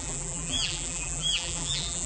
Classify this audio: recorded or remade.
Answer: remade